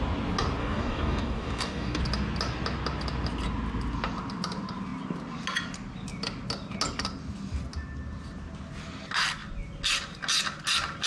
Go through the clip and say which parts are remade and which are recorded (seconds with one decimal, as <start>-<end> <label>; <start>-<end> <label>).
0.0-0.6 recorded; 0.6-2.0 remade; 2.0-11.1 recorded